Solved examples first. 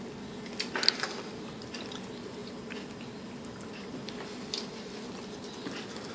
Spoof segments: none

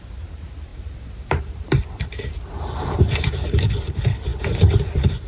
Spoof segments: 0.7-3.9 (vocoder, BigVGAN v2)